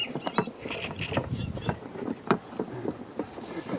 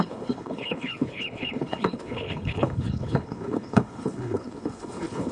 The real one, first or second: first